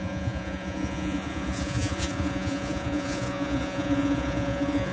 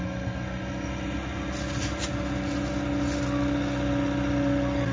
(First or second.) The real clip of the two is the second